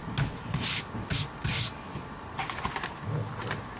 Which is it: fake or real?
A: real